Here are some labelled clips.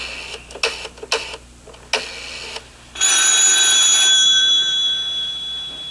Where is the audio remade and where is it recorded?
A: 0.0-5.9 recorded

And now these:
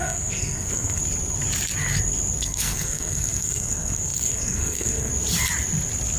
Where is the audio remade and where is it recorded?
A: 0.0-1.0 remade; 1.0-2.4 recorded; 2.4-5.1 remade; 5.1-6.2 recorded

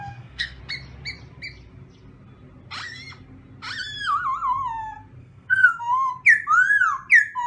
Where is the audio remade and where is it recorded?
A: 0.0-0.6 remade; 0.6-5.2 recorded; 5.2-6.1 remade; 6.1-7.5 recorded

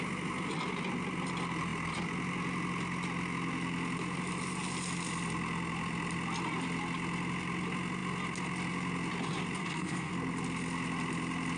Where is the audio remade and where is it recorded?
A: 0.0-9.6 recorded; 9.6-10.1 remade; 10.1-11.6 recorded

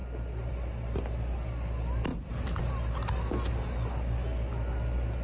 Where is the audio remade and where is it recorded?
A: 0.0-5.2 recorded

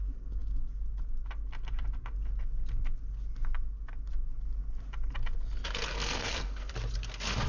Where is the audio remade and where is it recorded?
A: 0.0-5.9 recorded; 5.9-6.7 remade; 6.7-7.5 recorded

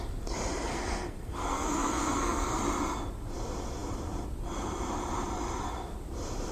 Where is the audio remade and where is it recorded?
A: 0.0-0.7 recorded; 0.7-2.6 remade; 2.6-6.5 recorded

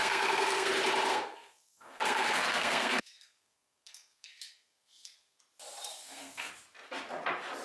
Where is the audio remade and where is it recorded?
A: 0.0-0.7 remade; 0.7-1.1 recorded; 1.1-5.4 remade; 5.4-5.9 recorded; 5.9-6.5 remade; 6.5-7.6 recorded